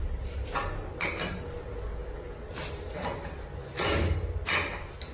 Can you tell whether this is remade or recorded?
recorded